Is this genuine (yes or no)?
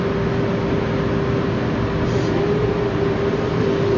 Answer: yes